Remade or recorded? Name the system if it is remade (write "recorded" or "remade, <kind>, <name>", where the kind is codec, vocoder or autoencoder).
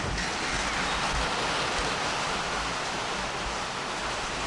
recorded